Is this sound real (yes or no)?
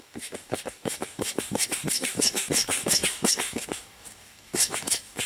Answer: no